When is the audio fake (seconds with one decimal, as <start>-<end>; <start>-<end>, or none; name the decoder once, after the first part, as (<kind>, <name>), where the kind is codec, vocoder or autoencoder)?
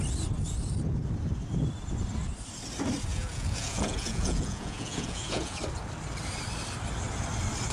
3.1-5.6 (vocoder, Vocos)